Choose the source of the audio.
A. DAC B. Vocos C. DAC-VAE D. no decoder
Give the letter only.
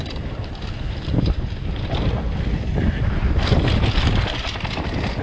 D